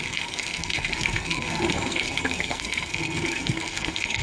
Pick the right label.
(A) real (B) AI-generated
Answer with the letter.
B